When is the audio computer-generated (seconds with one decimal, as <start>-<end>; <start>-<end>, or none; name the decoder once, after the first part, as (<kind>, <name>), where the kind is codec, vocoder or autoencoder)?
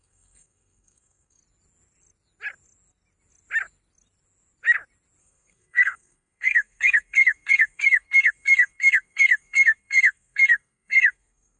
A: 0.0-1.4 (codec, SNAC); 5.2-11.6